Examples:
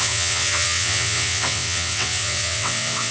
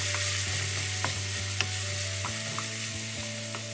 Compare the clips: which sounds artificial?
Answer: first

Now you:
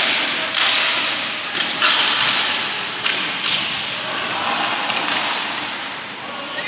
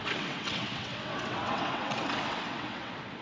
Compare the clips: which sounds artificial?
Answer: second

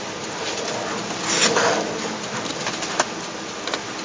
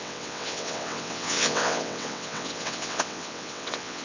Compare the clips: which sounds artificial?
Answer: second